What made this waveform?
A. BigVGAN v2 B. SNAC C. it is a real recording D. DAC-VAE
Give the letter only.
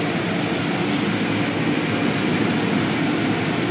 C